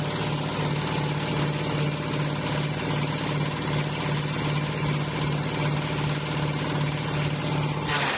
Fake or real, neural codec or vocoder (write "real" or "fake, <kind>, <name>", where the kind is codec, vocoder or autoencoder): real